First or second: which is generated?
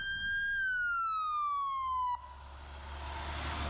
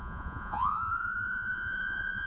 second